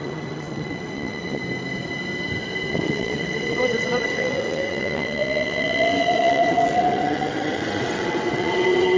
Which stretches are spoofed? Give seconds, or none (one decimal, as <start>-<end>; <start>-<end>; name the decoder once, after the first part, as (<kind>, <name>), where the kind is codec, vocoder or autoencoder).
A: 0.0-1.4 (vocoder, WaveNeXt); 2.7-9.0